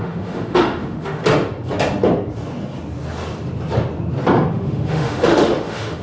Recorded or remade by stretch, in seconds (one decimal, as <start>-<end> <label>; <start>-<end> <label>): 0.0-1.2 remade; 1.2-4.5 recorded; 4.5-6.0 remade